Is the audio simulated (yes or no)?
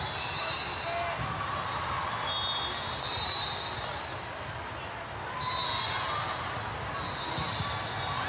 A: no